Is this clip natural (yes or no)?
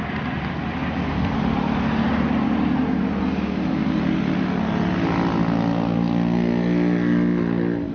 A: yes